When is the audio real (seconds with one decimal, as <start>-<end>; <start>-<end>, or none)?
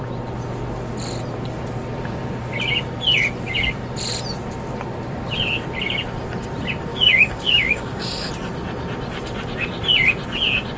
0.0-6.9; 8.3-10.8